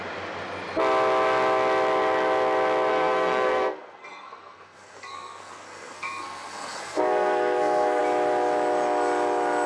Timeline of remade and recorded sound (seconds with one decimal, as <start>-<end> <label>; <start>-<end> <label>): 0.0-2.9 recorded; 2.9-8.0 remade; 8.0-9.7 recorded